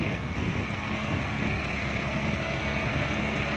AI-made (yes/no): yes